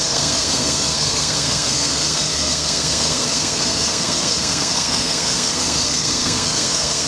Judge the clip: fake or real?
fake